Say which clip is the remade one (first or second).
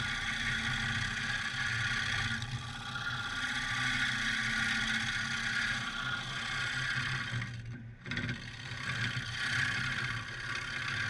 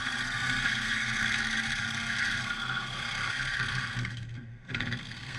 second